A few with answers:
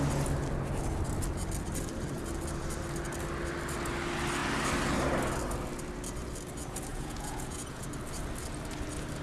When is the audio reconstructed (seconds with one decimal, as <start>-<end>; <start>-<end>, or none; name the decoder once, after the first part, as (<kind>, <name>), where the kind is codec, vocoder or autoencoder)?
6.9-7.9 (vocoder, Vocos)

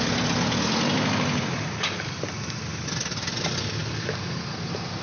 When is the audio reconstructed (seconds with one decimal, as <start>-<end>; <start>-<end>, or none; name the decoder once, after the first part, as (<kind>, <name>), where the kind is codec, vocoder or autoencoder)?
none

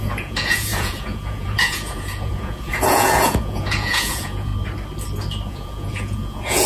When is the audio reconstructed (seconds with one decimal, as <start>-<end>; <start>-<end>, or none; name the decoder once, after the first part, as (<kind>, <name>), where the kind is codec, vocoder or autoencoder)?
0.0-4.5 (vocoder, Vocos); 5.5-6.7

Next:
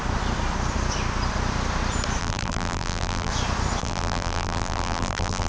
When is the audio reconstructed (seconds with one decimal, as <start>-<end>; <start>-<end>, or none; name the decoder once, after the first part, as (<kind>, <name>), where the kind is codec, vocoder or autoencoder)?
2.2-3.3 (vocoder, BigVGAN v2); 3.8-5.5

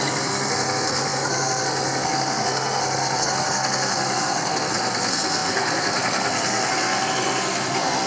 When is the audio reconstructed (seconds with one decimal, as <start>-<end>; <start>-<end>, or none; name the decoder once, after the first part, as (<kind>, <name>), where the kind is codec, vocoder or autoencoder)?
0.0-8.1 (codec, SNAC)

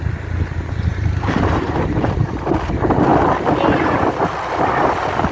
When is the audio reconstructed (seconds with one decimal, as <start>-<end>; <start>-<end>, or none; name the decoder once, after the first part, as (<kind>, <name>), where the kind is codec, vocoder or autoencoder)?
0.9-2.5 (vocoder, BigVGAN v2)